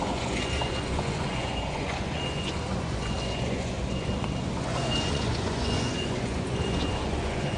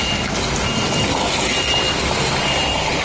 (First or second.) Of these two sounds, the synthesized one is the first